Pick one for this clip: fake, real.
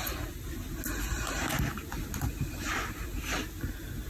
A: real